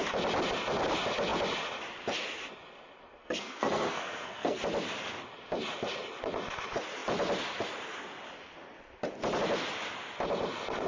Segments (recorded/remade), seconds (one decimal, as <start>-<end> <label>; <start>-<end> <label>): 0.0-3.2 recorded; 3.2-4.6 remade; 4.6-10.9 recorded